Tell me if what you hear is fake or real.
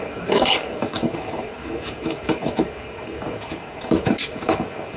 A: fake